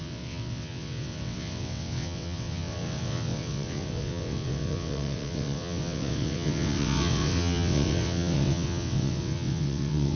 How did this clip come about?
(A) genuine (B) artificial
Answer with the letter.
B